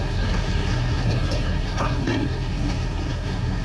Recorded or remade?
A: remade